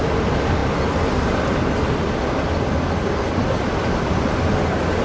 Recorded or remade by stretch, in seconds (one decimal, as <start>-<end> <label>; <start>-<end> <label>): 0.0-5.0 recorded